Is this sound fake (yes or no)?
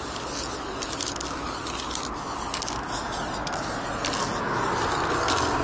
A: no